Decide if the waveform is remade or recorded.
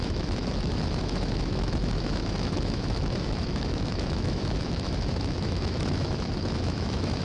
remade